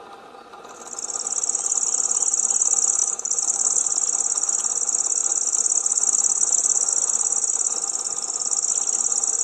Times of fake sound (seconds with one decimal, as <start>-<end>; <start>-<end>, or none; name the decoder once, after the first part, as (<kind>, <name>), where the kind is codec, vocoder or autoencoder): 3.0-3.8 (vocoder, BigVGAN v2)